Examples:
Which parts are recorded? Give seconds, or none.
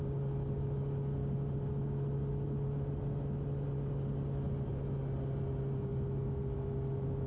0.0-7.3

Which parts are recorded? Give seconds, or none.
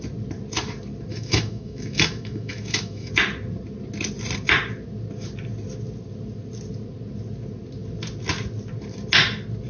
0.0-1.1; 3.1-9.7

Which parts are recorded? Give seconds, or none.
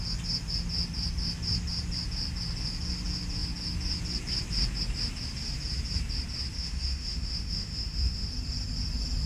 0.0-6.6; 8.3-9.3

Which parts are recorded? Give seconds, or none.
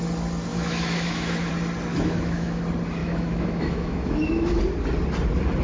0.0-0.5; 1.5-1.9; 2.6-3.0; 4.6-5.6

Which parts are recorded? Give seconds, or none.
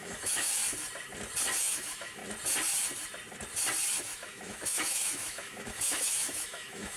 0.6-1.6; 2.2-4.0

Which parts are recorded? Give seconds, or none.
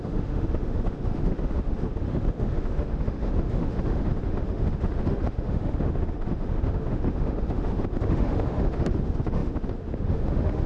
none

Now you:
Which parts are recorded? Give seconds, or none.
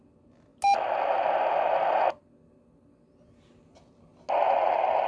0.0-5.1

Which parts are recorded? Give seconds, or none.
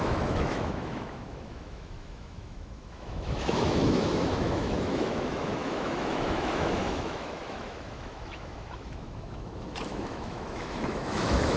none